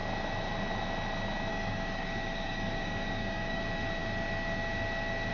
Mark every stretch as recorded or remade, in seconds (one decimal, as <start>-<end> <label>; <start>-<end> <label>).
0.0-1.5 recorded; 1.5-3.6 remade; 3.6-5.3 recorded